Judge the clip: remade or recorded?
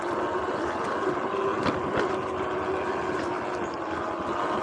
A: recorded